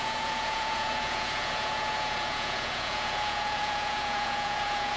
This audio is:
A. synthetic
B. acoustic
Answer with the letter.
A